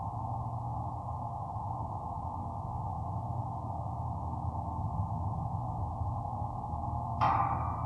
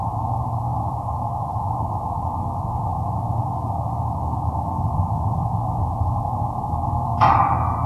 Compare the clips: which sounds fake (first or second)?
second